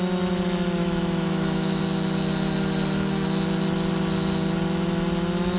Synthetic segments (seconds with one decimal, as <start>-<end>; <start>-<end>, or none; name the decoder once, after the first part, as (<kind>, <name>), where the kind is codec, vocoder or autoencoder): 0.8-1.8 (autoencoder, DAC-VAE)